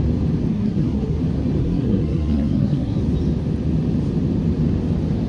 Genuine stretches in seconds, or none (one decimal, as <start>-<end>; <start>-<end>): 0.0-0.5; 1.2-1.6; 3.0-5.3